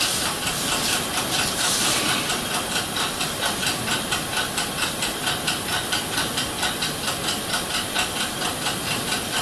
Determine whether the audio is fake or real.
real